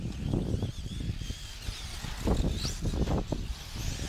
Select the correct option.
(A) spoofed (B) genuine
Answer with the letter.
B